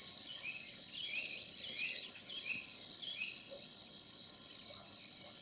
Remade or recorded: recorded